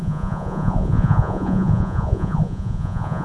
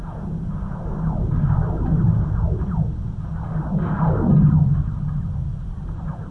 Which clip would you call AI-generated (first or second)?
first